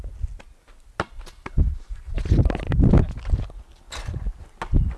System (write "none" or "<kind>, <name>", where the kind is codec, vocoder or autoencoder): none